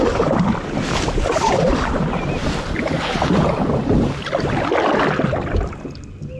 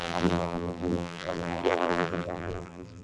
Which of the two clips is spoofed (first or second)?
second